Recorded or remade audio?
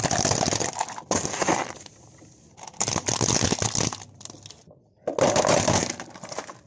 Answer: recorded